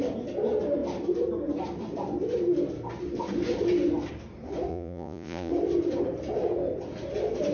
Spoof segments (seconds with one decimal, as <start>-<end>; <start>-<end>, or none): 4.7-5.5